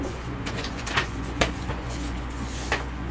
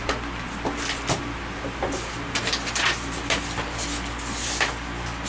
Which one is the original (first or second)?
second